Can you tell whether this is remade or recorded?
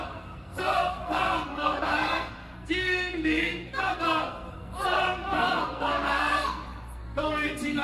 remade